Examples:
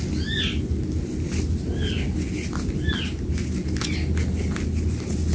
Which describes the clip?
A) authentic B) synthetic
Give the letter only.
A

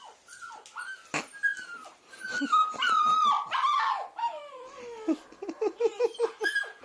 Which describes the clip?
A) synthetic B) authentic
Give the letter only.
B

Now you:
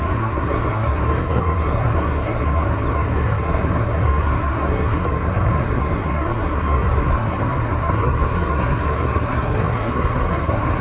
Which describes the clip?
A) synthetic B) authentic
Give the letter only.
A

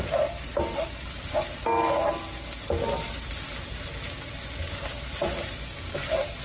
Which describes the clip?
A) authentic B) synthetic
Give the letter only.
A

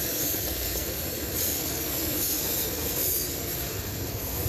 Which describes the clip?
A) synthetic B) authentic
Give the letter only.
A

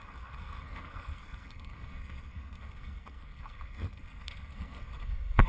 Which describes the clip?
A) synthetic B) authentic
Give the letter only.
A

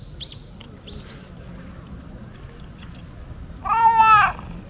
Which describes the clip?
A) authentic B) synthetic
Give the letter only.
A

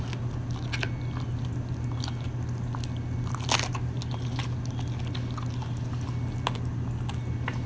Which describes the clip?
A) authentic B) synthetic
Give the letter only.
A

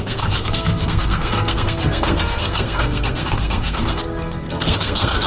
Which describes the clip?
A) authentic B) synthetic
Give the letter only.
B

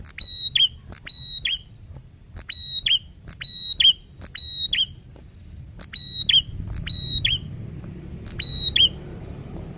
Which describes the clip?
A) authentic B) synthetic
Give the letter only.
A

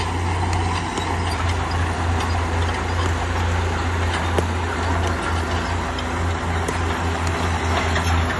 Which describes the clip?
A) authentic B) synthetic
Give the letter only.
A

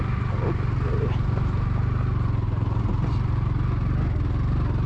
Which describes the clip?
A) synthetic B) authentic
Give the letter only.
B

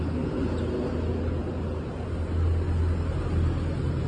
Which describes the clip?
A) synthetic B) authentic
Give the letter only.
B